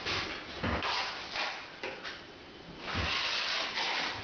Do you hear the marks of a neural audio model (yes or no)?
no